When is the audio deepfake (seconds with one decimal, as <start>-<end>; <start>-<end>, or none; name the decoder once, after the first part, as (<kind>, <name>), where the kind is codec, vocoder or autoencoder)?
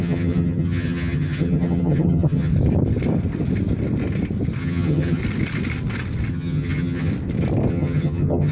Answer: 0.0-2.5 (vocoder, HiFi-GAN); 4.6-5.2; 6.3-7.1; 7.7-8.5